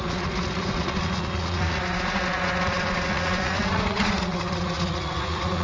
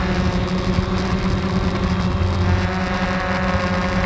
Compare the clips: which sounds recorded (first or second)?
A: second